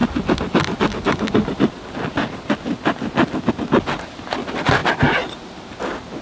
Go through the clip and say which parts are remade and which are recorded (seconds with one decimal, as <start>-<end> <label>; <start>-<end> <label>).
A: 0.0-6.2 recorded